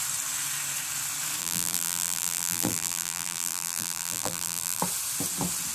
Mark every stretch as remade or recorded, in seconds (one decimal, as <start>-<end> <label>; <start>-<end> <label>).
0.0-1.4 recorded; 1.4-4.8 remade; 4.8-5.7 recorded